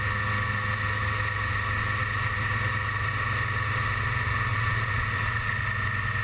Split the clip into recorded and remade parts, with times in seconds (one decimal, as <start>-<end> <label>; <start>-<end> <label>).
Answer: 0.0-4.5 recorded; 4.5-5.6 remade; 5.6-6.2 recorded